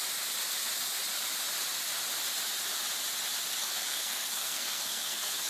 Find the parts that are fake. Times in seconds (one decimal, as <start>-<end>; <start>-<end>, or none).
3.6-5.5

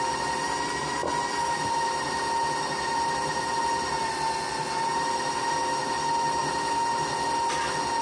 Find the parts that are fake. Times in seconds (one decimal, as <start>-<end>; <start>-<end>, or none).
none

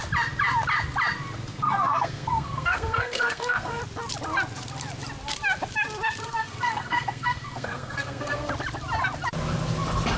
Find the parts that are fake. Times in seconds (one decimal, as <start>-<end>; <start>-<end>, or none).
1.5-3.8; 6.2-8.5

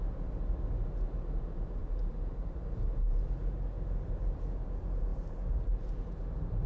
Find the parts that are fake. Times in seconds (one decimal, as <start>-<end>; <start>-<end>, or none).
1.8-2.6

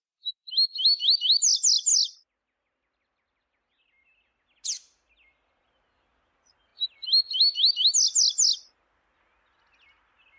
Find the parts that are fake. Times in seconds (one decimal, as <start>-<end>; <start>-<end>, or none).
none

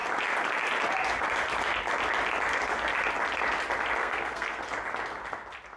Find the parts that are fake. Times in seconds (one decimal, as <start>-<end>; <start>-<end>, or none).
4.0-4.6